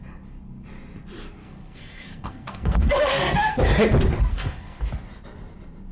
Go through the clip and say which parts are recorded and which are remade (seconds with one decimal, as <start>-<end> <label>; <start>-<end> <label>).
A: 0.0-1.4 recorded; 1.4-3.6 remade; 3.6-4.3 recorded; 4.3-4.8 remade; 4.8-5.9 recorded